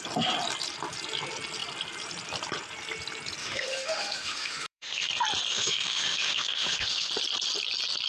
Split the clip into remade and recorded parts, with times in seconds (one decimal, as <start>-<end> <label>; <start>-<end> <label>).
0.0-3.4 recorded; 3.4-5.1 remade; 5.1-5.5 recorded; 5.5-7.1 remade; 7.1-8.1 recorded